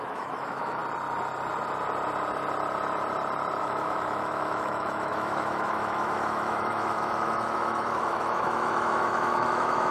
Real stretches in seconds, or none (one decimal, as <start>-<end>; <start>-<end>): 0.8-3.6